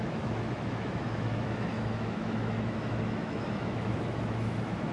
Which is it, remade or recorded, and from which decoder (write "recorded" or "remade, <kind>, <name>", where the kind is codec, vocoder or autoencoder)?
remade, autoencoder, DAC-VAE